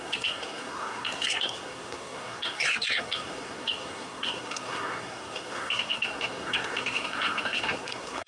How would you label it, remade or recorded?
remade